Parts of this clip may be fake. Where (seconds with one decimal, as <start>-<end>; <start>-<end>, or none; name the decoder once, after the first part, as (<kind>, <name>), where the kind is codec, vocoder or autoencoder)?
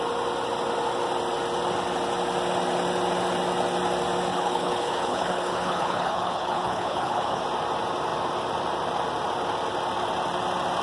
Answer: 4.3-7.4 (codec, HILCodec)